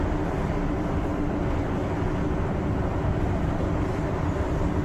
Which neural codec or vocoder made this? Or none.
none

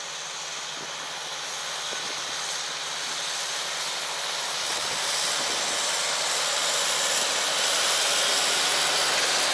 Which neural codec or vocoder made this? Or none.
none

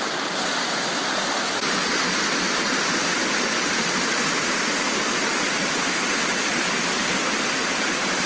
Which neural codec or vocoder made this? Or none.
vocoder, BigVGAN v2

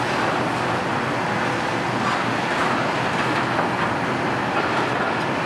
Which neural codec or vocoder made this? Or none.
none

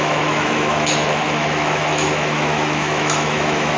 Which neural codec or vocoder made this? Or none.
autoencoder, DAC-VAE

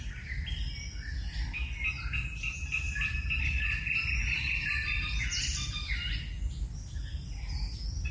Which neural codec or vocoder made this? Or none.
none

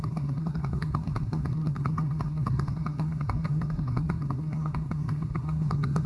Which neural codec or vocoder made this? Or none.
codec, SNAC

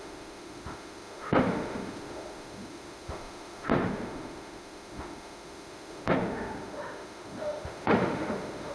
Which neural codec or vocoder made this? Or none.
autoencoder, DAC-VAE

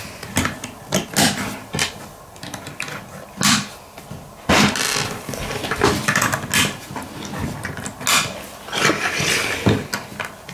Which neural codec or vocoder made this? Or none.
none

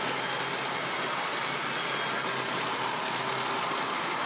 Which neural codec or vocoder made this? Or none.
none